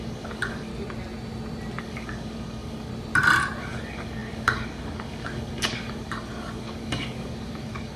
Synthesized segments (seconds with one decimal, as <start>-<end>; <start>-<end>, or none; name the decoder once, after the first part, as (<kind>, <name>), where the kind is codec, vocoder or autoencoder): 0.0-0.7 (codec, DAC); 1.8-2.9; 3.6-8.0